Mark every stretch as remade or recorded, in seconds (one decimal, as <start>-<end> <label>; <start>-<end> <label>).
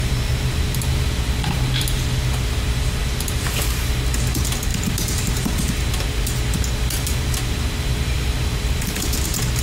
0.0-4.7 recorded; 4.7-5.6 remade; 5.6-9.6 recorded